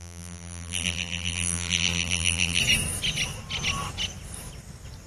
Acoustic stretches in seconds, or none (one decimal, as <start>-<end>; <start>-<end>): 2.6-5.1